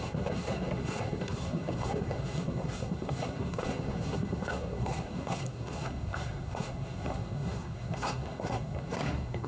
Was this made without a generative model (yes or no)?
no